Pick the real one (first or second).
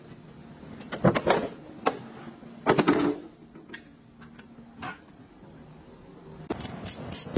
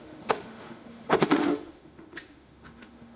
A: first